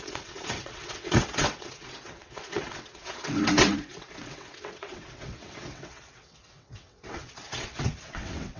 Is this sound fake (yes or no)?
yes